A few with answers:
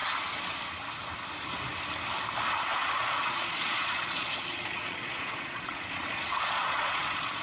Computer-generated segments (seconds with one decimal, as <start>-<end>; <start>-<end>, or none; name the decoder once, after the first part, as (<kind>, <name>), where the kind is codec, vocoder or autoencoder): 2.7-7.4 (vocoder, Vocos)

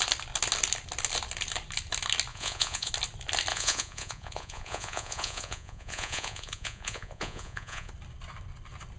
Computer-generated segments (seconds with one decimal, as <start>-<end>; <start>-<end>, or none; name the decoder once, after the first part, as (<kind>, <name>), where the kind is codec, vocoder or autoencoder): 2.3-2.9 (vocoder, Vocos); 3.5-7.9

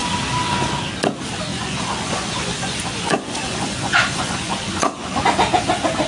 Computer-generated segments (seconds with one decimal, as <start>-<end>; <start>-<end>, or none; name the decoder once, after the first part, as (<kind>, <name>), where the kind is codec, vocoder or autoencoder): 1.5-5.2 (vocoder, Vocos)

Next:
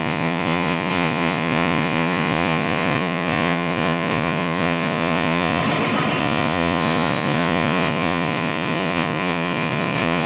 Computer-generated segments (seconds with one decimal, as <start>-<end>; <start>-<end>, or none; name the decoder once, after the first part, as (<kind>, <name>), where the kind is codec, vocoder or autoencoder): 0.0-5.6 (vocoder, Vocos); 6.2-10.3